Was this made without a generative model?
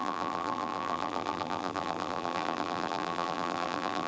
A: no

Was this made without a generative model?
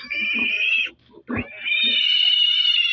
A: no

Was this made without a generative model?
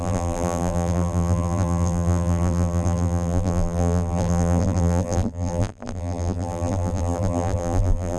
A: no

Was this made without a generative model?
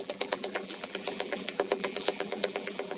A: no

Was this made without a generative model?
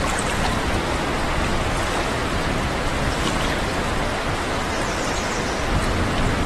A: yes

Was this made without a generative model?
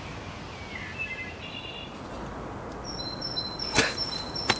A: yes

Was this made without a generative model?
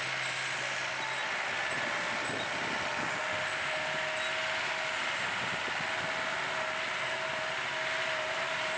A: yes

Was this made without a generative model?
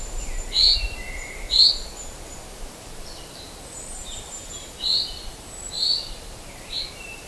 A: no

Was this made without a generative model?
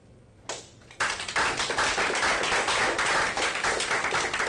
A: yes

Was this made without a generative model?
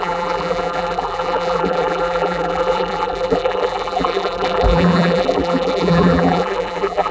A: no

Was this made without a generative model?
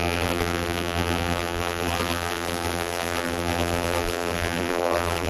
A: no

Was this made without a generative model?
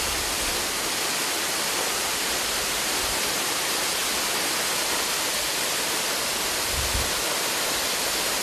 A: yes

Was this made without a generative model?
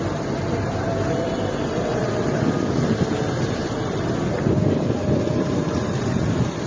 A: no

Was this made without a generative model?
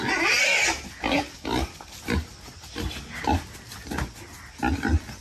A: yes